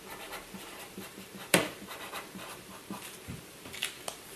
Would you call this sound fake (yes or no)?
yes